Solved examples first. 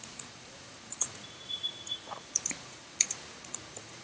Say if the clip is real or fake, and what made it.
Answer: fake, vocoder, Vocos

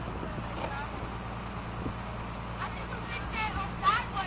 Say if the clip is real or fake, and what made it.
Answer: real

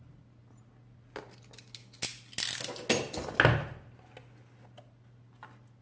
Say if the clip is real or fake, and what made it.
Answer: real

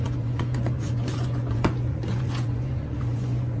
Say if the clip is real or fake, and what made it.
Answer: fake, vocoder, Vocos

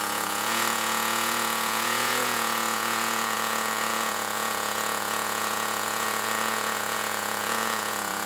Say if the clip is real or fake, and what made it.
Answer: fake, vocoder, Vocos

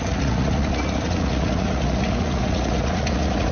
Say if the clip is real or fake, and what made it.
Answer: fake, vocoder, Vocos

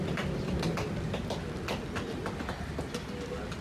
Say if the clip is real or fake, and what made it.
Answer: real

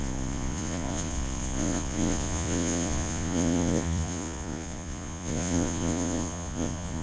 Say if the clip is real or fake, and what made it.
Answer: fake, vocoder, Vocos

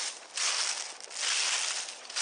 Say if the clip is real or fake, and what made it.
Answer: real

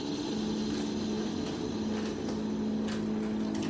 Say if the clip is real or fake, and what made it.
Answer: real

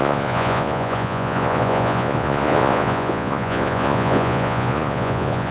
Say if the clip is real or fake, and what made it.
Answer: fake, vocoder, Vocos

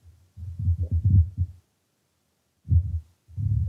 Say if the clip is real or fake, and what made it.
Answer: real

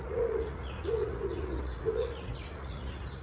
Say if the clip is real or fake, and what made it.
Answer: fake, vocoder, Vocos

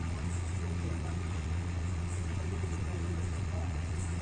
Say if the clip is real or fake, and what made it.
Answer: fake, vocoder, Vocos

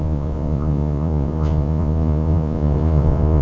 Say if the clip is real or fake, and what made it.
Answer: fake, vocoder, Vocos